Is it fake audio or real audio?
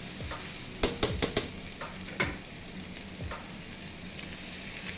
real